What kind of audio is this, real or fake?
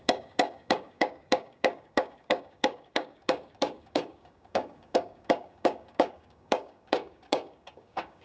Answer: fake